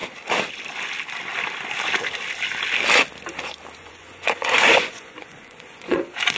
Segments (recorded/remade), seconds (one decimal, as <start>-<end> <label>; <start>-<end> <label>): 0.0-3.8 recorded; 3.8-6.0 remade; 6.0-6.4 recorded